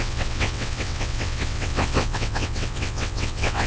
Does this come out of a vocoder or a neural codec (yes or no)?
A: yes